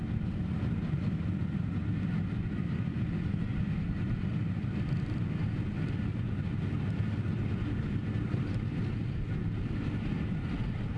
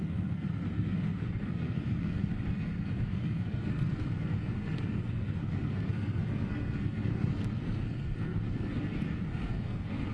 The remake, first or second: second